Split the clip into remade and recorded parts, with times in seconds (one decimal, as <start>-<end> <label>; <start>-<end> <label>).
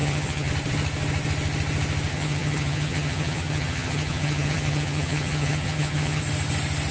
0.0-0.5 remade; 0.5-2.1 recorded; 2.1-6.2 remade; 6.2-6.9 recorded